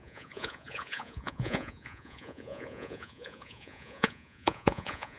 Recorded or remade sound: remade